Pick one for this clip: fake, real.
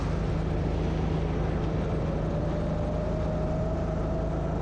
real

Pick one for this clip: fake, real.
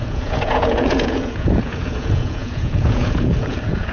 fake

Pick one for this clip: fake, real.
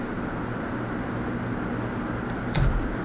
fake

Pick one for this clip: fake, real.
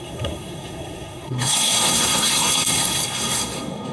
fake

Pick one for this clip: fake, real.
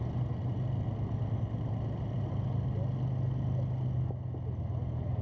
real